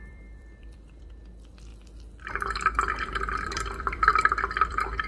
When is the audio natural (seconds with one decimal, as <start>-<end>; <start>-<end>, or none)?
1.7-2.9